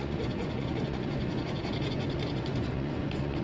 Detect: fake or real fake